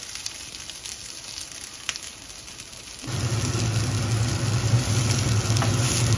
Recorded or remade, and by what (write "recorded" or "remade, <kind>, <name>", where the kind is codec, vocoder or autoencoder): recorded